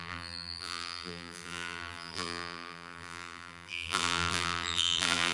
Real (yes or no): no